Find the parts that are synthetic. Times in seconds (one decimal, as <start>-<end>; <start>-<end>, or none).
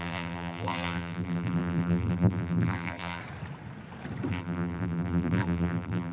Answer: 0.0-3.2; 4.3-6.1